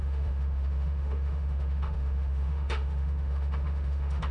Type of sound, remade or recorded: remade